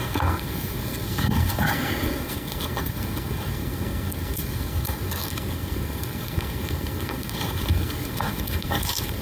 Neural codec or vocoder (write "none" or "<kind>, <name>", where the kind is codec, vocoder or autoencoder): codec, SNAC